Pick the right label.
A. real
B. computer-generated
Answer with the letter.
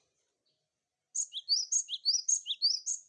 A